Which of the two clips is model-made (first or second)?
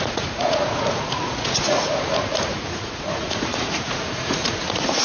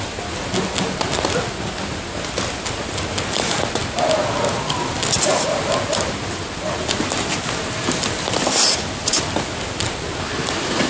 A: first